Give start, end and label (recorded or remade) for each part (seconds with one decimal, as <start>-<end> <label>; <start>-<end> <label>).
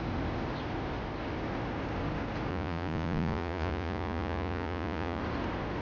0.0-2.5 recorded; 2.5-5.2 remade; 5.2-5.8 recorded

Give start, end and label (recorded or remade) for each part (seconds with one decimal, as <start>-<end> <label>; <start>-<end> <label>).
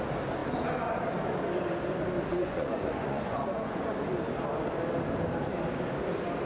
0.0-2.3 recorded; 2.3-3.9 remade; 3.9-6.5 recorded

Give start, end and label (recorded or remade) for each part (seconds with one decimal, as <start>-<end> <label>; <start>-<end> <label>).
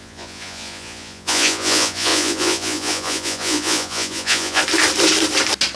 0.0-4.6 remade; 4.6-5.8 recorded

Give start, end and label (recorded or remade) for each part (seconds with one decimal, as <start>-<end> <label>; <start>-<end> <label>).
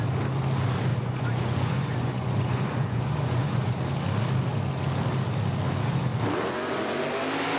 0.0-0.9 recorded; 0.9-3.7 remade; 3.7-7.6 recorded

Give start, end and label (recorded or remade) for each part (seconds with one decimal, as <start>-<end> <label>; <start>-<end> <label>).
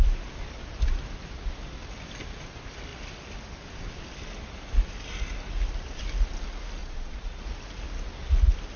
0.0-6.8 recorded; 6.8-7.4 remade; 7.4-8.8 recorded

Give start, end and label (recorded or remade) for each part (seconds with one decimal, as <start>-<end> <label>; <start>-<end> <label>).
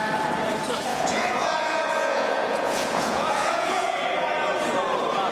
0.0-0.9 recorded; 0.9-4.0 remade; 4.0-5.3 recorded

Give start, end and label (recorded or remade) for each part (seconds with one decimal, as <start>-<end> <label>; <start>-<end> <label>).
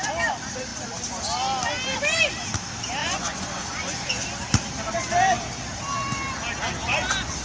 0.0-3.0 recorded; 3.0-4.1 remade; 4.1-7.4 recorded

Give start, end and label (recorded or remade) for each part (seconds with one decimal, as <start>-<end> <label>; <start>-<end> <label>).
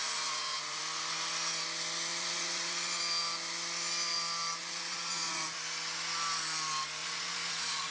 0.0-0.8 remade; 0.8-2.1 recorded; 2.1-3.0 remade; 3.0-4.6 recorded; 4.6-5.6 remade; 5.6-7.0 recorded; 7.0-7.9 remade